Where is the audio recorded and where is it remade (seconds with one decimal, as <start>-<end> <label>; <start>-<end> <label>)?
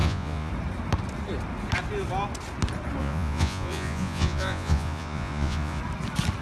0.0-0.5 remade; 0.5-3.0 recorded; 3.0-5.8 remade; 5.8-6.4 recorded